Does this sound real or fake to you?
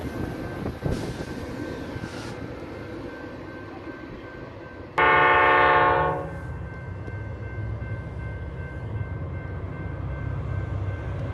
real